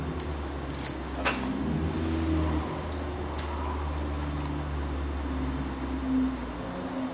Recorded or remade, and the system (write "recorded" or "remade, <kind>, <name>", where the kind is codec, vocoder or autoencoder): recorded